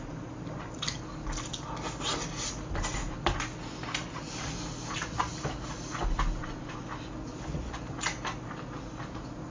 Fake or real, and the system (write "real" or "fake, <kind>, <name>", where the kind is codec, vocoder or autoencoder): real